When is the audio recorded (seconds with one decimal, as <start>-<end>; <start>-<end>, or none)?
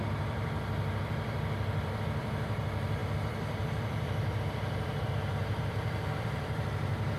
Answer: none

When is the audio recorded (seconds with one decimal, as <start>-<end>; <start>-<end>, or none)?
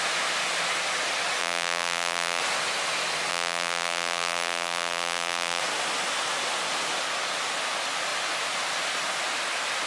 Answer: 0.0-1.4; 2.4-3.3; 5.6-9.9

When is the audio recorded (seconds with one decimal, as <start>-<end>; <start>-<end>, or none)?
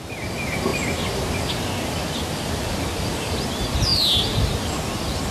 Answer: 0.0-5.3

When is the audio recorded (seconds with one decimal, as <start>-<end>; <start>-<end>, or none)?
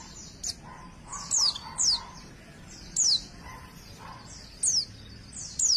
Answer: 0.0-5.8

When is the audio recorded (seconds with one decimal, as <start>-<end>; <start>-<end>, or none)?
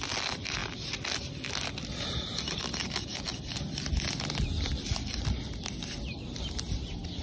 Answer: 0.0-3.1; 3.9-7.2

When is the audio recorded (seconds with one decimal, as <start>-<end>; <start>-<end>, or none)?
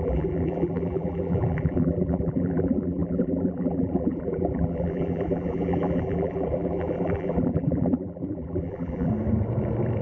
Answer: 9.1-10.0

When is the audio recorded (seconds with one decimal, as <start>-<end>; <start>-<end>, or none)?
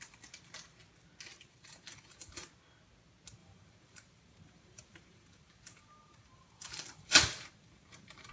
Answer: 0.0-1.3; 2.5-3.4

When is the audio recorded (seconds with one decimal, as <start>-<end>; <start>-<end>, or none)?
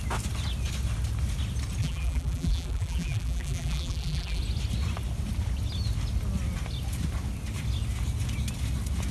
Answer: 0.0-1.8; 4.4-9.1